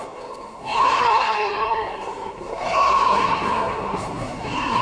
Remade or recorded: remade